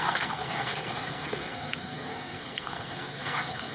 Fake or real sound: fake